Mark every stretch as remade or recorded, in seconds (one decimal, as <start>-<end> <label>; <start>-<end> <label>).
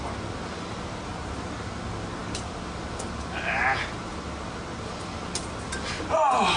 0.0-1.1 recorded; 1.1-1.7 remade; 1.7-6.6 recorded